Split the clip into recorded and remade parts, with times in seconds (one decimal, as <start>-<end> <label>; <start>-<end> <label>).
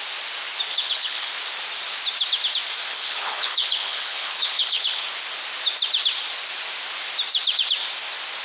0.0-0.7 recorded; 0.7-1.3 remade; 1.3-2.9 recorded; 2.9-5.0 remade; 5.0-8.4 recorded